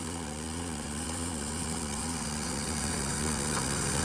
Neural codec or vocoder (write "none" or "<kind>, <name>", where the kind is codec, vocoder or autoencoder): vocoder, WaveNeXt